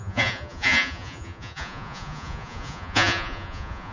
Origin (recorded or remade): remade